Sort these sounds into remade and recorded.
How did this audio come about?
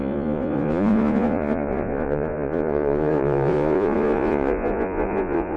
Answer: remade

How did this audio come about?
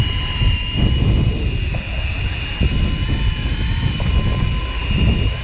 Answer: recorded